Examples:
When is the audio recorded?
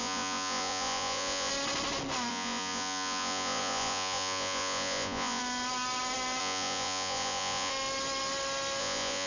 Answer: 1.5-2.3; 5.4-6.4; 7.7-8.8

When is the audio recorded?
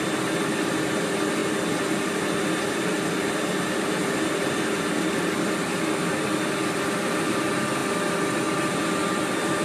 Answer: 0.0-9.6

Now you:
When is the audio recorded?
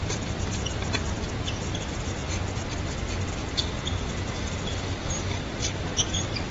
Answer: 2.2-6.1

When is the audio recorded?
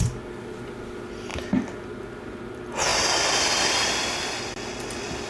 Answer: 0.0-5.3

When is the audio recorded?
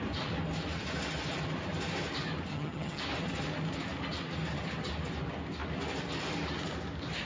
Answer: 0.0-2.5; 3.0-7.3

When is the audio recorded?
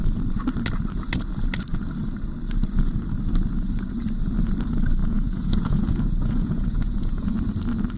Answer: 0.0-5.0; 7.3-8.0